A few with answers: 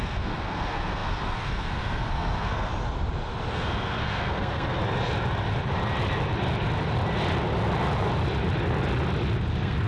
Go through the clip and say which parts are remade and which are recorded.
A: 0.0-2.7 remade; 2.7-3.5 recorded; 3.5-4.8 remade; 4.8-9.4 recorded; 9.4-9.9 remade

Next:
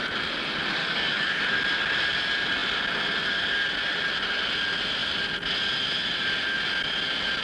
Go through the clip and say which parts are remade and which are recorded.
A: 0.0-0.8 recorded; 0.8-1.4 remade; 1.4-7.4 recorded

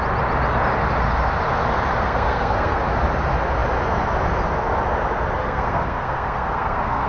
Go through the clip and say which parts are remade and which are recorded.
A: 0.0-1.9 recorded; 1.9-2.8 remade; 2.8-5.4 recorded; 5.4-7.1 remade